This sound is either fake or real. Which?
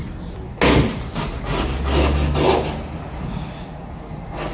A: real